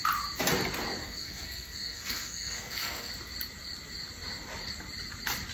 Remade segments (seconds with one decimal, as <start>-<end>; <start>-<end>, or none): 1.0-3.1